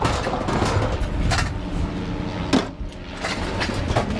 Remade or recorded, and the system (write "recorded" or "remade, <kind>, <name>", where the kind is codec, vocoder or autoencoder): recorded